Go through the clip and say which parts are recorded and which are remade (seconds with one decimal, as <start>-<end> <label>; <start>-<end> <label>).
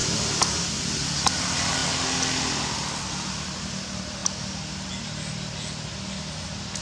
0.0-0.6 remade; 0.6-4.2 recorded; 4.2-4.9 remade; 4.9-6.8 recorded